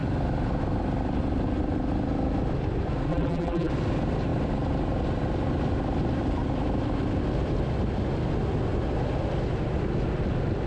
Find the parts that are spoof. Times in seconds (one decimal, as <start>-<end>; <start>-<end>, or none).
3.1-3.7

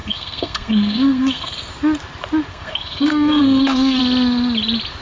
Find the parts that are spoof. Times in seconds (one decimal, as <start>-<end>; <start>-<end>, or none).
0.0-1.7; 2.5-4.0

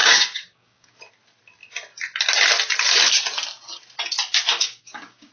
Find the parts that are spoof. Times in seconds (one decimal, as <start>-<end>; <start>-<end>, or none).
0.0-1.0; 4.5-5.3